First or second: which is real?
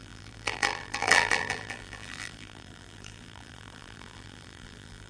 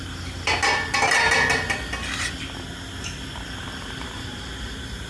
second